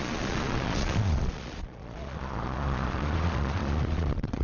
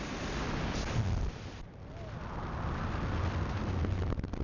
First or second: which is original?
second